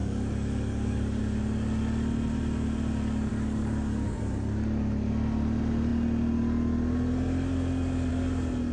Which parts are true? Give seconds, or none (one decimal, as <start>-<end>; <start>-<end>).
1.2-3.3; 4.2-8.7